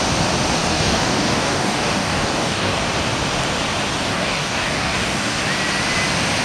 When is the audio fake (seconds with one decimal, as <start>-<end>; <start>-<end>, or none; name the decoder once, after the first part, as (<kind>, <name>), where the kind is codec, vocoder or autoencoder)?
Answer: 0.6-2.8 (codec, DAC); 4.1-5.4